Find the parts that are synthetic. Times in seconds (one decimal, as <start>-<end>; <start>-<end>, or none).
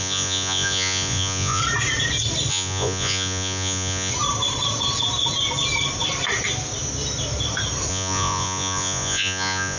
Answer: 0.0-1.6; 2.5-4.1; 7.9-9.8